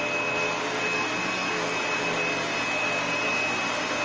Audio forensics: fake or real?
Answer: real